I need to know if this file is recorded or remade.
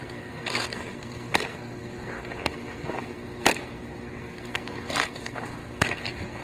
remade